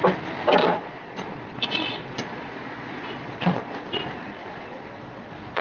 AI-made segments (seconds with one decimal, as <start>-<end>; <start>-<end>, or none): 0.6-4.0; 4.4-5.6